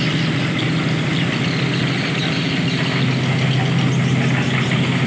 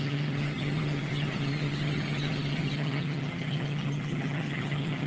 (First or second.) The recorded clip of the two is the first